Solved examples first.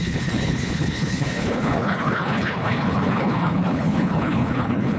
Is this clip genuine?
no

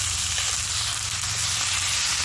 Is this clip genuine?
yes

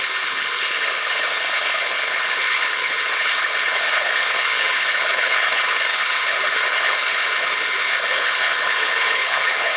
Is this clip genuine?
no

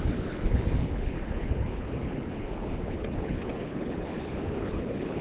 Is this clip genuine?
no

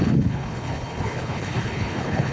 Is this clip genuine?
no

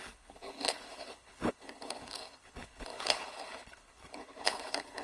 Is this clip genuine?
no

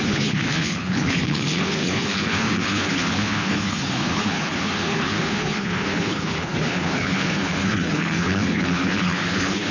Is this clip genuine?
no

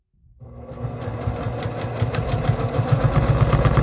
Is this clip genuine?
yes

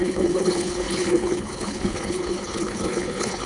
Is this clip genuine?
no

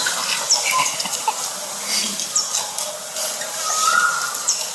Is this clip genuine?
yes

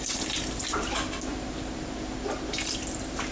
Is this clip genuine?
yes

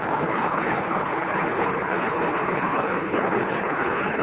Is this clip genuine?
no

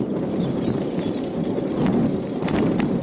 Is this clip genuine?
yes